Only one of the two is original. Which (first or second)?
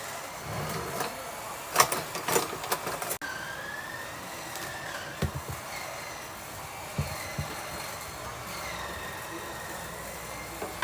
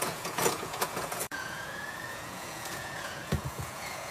first